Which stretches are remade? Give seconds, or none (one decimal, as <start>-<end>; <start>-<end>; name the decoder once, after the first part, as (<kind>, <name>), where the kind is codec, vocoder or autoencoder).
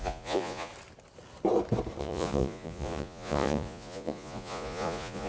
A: 0.0-0.7 (vocoder, Vocos); 2.0-5.3